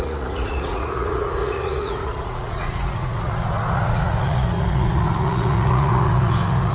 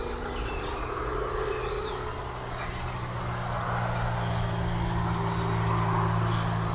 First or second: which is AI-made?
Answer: first